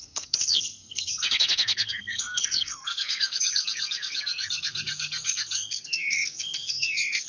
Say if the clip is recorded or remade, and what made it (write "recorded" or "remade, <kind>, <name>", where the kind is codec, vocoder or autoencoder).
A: remade, codec, SNAC